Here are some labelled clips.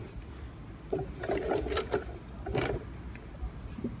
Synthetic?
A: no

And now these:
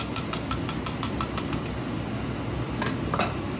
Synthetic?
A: no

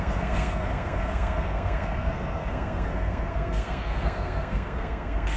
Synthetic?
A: yes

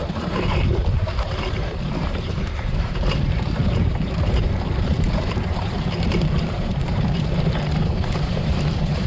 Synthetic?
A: yes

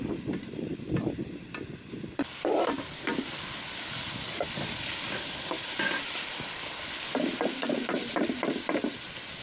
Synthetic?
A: no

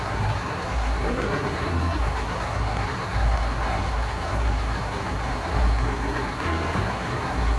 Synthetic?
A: yes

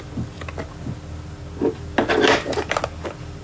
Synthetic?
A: no